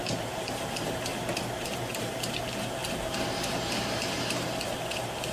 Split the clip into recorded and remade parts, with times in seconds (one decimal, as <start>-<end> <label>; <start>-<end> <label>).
0.0-1.1 remade; 1.1-1.6 recorded; 1.6-5.3 remade